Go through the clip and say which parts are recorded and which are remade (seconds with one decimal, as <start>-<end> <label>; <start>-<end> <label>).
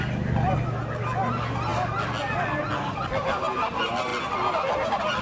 0.0-5.2 recorded